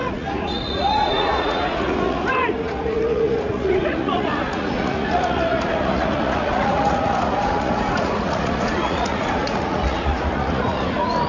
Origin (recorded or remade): remade